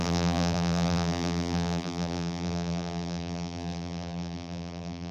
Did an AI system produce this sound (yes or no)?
yes